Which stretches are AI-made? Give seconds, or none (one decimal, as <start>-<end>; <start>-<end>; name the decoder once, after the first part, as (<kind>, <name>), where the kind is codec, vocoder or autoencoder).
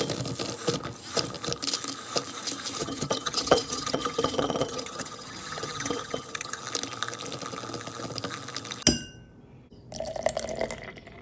2.8-6.6 (vocoder, HiFi-GAN)